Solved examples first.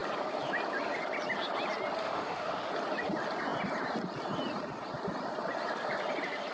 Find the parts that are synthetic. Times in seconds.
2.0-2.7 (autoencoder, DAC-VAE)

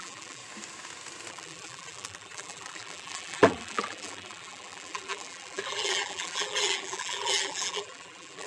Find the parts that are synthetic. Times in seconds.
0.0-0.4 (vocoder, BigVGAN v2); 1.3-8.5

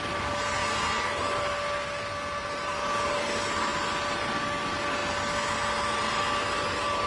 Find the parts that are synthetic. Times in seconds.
none

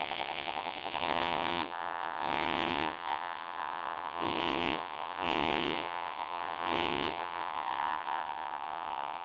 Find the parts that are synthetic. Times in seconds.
0.0-9.2 (vocoder, WaveNeXt)

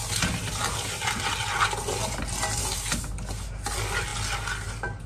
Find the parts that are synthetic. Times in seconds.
none

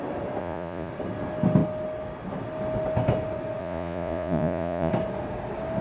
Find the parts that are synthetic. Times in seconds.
0.4-0.9 (vocoder, Vocos); 3.6-4.9

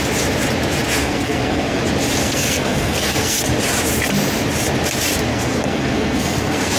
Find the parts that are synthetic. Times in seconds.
1.0-1.8 (codec, SNAC); 2.2-3.4; 5.3-6.8

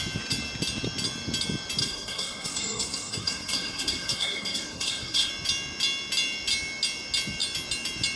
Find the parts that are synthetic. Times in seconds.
1.8-5.3 (codec, SNAC)